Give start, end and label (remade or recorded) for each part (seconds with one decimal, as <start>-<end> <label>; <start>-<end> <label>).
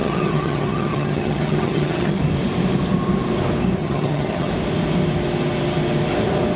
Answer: 0.0-2.2 remade; 2.2-3.8 recorded; 3.8-4.5 remade; 4.5-6.6 recorded